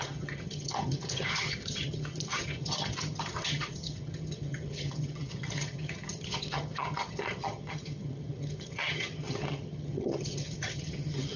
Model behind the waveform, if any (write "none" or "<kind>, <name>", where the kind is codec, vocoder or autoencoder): vocoder, HiFi-GAN